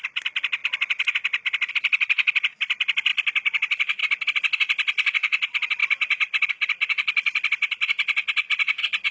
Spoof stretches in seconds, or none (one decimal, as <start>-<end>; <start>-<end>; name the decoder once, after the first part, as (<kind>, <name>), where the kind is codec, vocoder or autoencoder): none